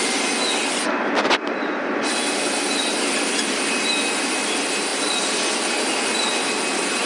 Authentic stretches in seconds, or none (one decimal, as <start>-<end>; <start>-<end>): 0.0-0.6; 3.6-7.1